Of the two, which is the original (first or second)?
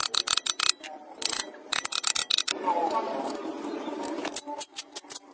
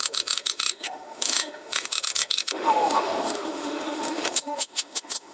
first